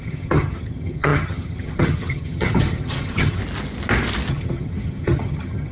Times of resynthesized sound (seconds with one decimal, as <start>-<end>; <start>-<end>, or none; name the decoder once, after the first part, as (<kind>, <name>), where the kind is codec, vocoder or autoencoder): 0.0-3.4 (vocoder, HiFi-GAN); 4.3-5.7